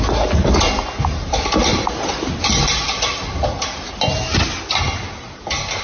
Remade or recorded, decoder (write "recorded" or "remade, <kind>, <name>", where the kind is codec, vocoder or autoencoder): recorded